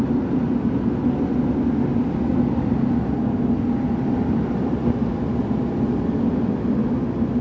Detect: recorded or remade recorded